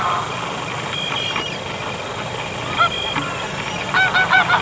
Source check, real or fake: real